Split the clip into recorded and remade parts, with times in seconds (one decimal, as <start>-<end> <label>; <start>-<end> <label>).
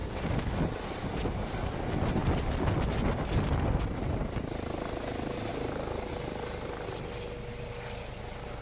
0.0-8.6 recorded